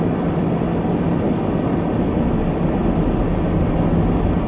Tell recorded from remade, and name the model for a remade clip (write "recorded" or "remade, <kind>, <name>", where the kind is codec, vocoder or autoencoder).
recorded